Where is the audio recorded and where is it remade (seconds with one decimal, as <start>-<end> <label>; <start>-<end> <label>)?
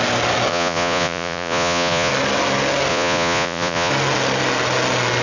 0.0-0.5 recorded; 0.5-2.1 remade; 2.1-2.9 recorded; 2.9-3.9 remade; 3.9-5.2 recorded